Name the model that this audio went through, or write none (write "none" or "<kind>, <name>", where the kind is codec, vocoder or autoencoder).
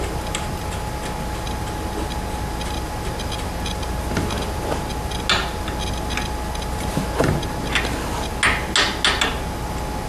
none